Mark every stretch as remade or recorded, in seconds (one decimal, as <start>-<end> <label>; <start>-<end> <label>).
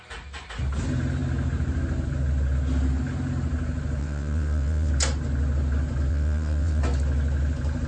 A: 0.0-4.0 recorded; 4.0-4.9 remade; 4.9-6.1 recorded; 6.1-6.8 remade; 6.8-7.9 recorded